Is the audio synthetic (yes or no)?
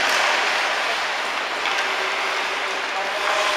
no